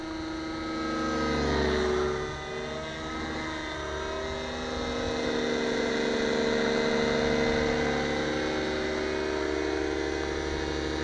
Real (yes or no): yes